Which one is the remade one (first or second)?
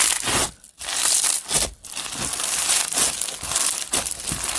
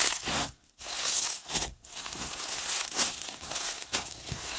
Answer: second